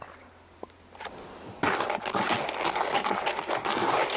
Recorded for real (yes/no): yes